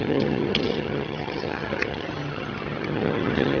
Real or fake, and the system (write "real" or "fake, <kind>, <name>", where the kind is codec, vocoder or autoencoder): fake, vocoder, HiFi-GAN